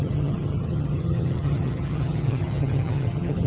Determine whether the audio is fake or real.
fake